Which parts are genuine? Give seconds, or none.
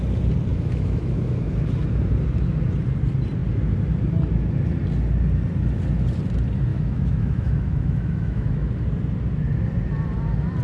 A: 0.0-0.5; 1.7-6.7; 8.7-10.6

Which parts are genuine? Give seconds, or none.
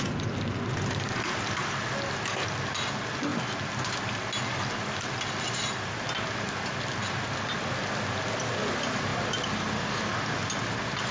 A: 0.0-11.1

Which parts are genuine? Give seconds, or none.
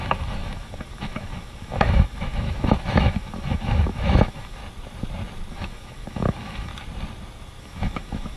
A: 4.6-5.5; 6.7-7.6